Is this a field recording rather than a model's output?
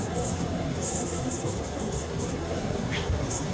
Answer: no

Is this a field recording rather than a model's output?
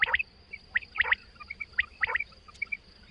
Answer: no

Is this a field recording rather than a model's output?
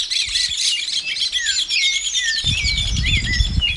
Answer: yes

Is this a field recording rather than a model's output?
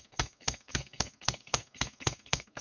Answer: no